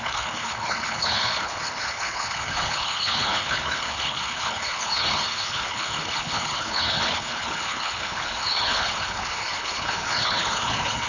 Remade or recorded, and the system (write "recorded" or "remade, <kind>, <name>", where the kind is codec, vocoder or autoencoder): remade, codec, HILCodec